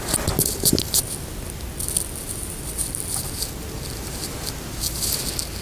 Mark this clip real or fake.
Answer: real